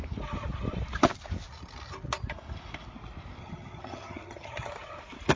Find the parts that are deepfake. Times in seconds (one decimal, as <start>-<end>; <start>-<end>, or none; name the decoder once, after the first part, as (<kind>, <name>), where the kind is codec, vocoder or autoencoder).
3.4-4.7 (vocoder, HiFi-GAN)

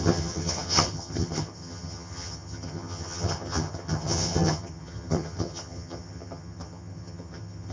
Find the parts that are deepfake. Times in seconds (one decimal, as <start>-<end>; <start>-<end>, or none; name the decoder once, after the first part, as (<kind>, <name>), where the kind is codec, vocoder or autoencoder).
0.0-7.7 (vocoder, HiFi-GAN)